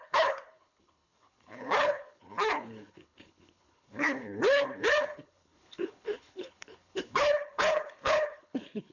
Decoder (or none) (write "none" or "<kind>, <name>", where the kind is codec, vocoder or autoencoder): codec, HILCodec